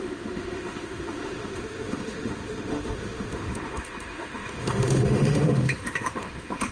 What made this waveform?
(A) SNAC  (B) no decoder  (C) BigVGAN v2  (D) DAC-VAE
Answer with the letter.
D